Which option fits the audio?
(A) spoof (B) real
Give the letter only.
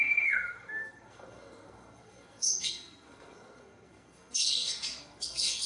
A